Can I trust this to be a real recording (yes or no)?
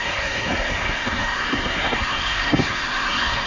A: no